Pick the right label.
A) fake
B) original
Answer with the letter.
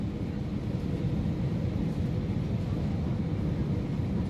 B